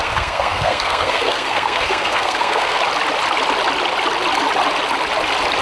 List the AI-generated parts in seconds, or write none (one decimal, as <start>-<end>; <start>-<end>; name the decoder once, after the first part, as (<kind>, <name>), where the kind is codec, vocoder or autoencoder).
0.0-2.8 (codec, SNAC)